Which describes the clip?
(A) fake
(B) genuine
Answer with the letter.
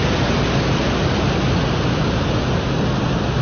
B